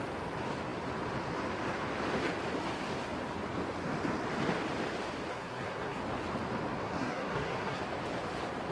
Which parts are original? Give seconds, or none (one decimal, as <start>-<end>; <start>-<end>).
0.0-5.3; 6.0-6.7; 7.8-8.7